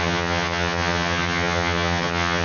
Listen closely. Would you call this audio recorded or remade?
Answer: remade